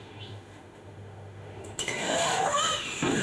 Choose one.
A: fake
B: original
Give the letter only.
A